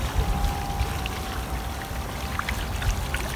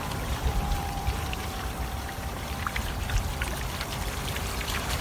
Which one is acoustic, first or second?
first